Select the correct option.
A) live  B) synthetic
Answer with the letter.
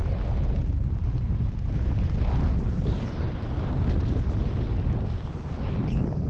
A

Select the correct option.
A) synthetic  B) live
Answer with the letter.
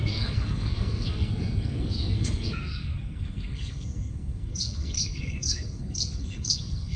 A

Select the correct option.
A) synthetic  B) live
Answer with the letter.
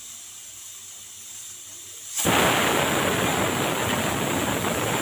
B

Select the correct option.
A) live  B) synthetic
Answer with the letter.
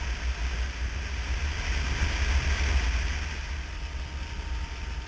A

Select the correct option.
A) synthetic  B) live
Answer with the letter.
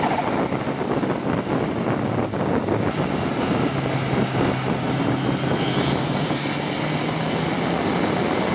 B